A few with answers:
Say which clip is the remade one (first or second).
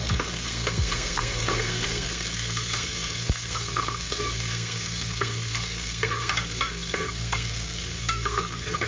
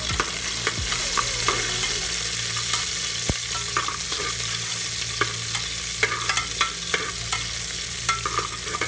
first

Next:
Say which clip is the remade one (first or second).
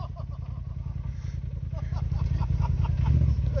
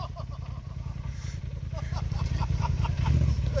second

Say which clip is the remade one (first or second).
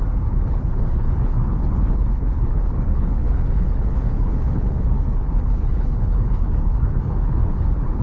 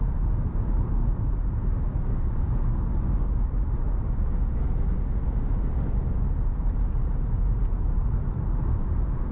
first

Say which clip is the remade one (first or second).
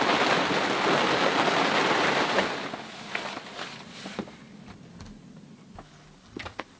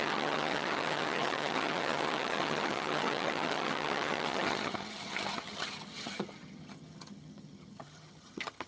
second